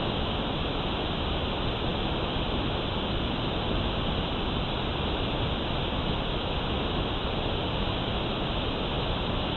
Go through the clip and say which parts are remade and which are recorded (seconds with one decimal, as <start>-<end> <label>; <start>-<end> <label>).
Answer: 0.0-9.6 recorded